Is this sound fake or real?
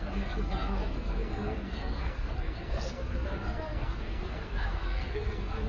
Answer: fake